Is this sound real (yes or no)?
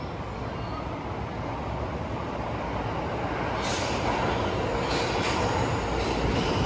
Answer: yes